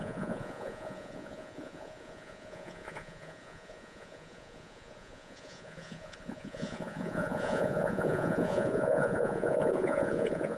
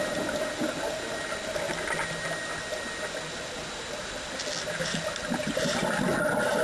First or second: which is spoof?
first